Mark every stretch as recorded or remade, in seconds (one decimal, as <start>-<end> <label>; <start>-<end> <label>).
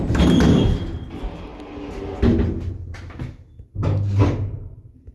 0.0-5.1 recorded